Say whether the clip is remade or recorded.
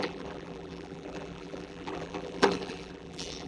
remade